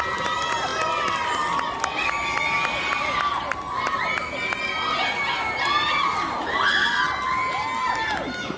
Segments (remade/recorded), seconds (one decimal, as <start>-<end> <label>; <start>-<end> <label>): 0.0-8.6 recorded